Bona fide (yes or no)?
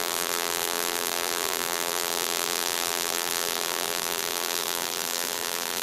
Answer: no